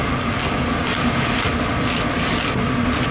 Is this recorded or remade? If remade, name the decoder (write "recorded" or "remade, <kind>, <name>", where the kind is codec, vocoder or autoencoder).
recorded